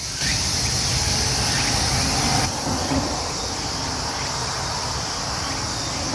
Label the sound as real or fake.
real